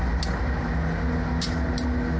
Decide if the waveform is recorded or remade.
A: recorded